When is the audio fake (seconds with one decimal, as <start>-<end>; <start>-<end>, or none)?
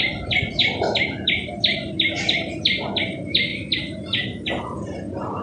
none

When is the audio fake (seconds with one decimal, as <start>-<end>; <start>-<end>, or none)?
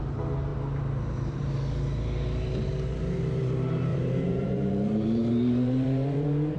0.5-1.5; 3.9-6.6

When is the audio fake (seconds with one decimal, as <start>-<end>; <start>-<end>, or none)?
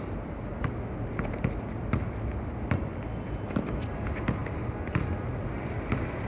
2.9-3.9; 4.4-4.9